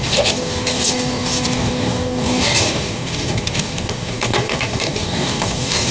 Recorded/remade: remade